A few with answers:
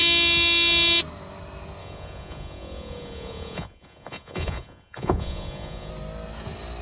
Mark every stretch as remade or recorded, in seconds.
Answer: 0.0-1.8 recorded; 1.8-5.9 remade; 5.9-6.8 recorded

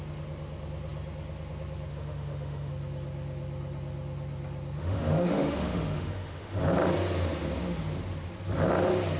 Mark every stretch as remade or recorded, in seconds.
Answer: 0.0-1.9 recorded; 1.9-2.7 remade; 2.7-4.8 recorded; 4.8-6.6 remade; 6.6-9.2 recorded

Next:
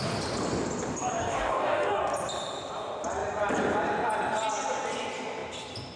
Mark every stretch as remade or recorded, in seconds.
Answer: 0.0-1.2 recorded; 1.2-2.0 remade; 2.0-6.0 recorded

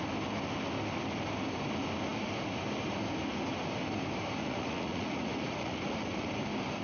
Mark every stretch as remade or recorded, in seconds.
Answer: 0.0-4.4 recorded; 4.4-6.3 remade; 6.3-6.8 recorded